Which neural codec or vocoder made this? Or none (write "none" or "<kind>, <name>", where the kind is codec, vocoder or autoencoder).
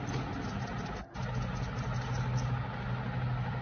none